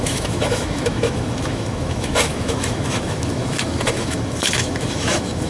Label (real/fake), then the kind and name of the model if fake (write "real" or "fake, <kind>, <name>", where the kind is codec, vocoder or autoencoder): fake, autoencoder, DAC-VAE